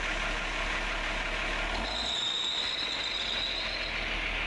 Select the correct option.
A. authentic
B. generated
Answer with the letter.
A